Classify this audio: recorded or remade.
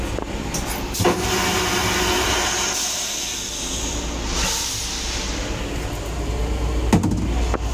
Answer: recorded